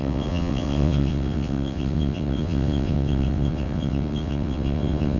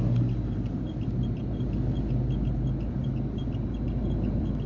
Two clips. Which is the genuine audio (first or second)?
second